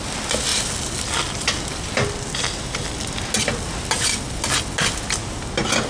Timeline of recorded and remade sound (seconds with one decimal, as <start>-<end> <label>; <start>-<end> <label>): 0.0-5.9 recorded